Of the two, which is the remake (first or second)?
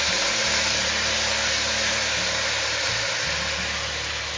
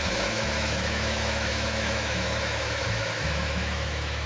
second